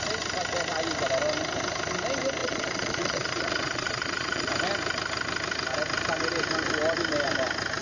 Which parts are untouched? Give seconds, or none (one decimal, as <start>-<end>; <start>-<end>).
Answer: 0.0-2.4; 4.5-7.8